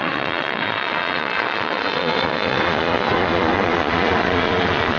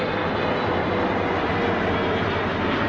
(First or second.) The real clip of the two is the second